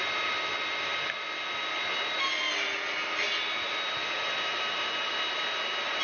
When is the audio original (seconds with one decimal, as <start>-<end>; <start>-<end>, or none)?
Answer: 0.0-6.0